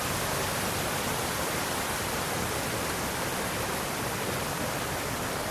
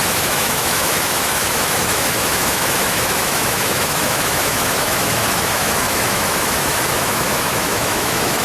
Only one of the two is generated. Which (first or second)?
second